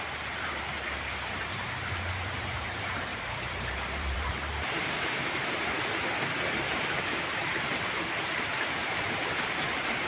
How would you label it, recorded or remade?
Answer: remade